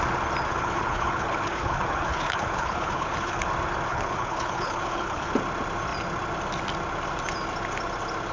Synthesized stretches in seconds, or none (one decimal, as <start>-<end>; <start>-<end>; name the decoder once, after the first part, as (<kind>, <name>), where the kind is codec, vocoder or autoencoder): 0.5-3.5 (codec, HILCodec); 3.9-5.3